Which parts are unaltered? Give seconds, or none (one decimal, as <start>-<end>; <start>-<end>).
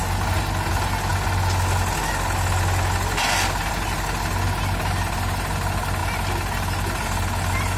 0.0-7.8